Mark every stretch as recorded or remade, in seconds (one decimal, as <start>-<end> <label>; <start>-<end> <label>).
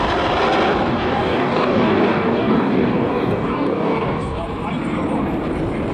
0.0-0.9 recorded; 0.9-4.4 remade; 4.4-5.9 recorded